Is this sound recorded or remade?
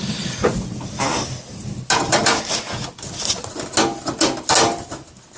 recorded